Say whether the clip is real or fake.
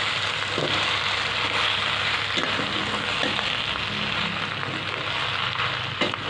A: real